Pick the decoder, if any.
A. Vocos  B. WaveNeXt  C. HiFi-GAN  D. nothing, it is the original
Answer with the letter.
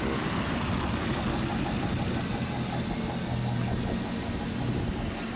D